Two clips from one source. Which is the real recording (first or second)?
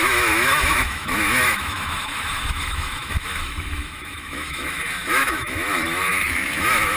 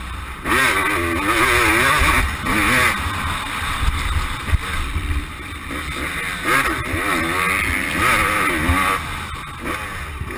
second